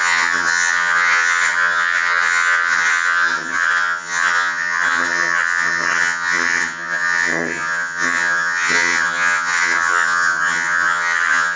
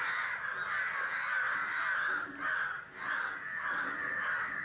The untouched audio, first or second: second